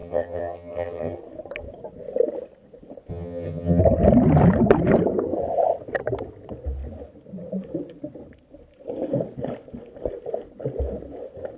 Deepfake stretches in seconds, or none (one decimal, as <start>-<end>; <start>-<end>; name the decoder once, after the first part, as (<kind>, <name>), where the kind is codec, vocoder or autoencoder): 0.0-1.2 (vocoder, HiFi-GAN); 3.1-3.8